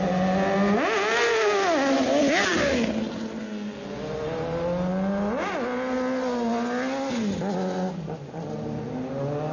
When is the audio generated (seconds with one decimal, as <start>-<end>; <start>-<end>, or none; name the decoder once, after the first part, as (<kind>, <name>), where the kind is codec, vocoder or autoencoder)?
none